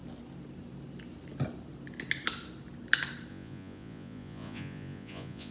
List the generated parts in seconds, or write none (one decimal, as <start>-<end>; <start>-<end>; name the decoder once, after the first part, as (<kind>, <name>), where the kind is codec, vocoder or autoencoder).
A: 3.3-5.5 (vocoder, Vocos)